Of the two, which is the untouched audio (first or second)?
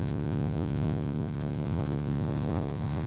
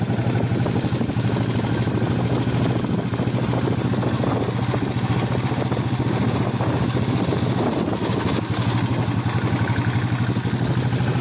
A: second